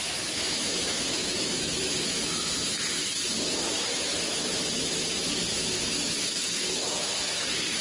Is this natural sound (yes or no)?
no